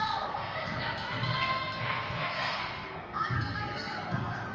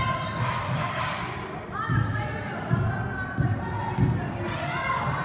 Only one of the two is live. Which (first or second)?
second